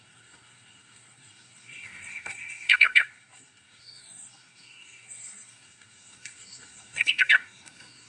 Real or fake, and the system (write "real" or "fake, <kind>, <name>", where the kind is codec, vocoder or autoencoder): fake, codec, SNAC